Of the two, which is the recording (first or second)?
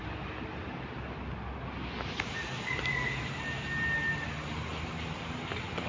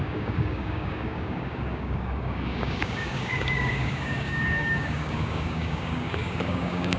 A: first